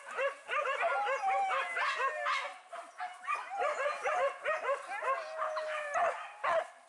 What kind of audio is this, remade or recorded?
recorded